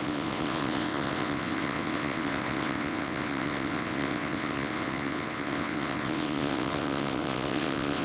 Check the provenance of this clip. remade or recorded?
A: remade